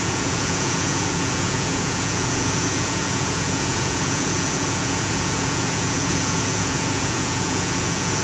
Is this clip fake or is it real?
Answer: fake